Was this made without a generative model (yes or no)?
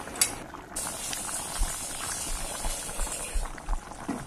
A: yes